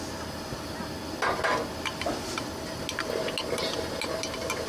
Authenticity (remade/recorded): recorded